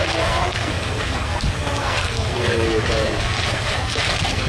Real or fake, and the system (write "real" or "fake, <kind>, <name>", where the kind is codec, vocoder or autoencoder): fake, codec, SNAC